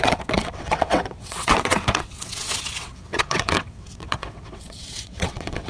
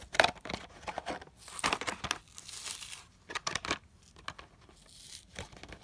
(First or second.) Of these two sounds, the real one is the second